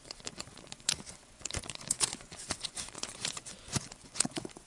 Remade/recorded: remade